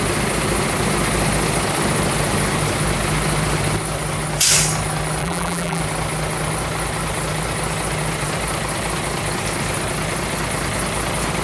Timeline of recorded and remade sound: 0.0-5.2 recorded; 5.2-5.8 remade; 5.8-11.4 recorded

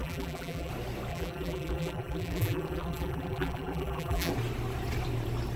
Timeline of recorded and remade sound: 0.0-0.7 remade; 0.7-1.1 recorded; 1.1-4.3 remade; 4.3-5.6 recorded

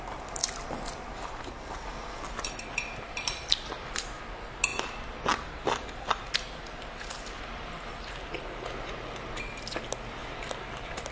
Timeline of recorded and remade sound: 0.0-0.4 recorded; 0.4-4.2 remade; 4.2-4.7 recorded; 4.7-7.9 remade; 7.9-11.1 recorded

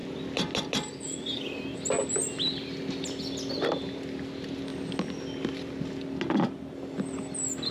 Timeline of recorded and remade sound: 0.0-7.7 recorded

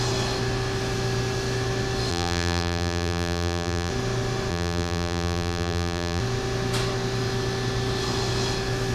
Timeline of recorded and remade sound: 0.0-2.1 recorded; 2.1-3.9 remade; 3.9-4.5 recorded; 4.5-6.2 remade; 6.2-8.9 recorded

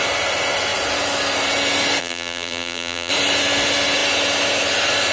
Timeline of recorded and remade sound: 0.0-2.0 recorded; 2.0-3.1 remade; 3.1-5.1 recorded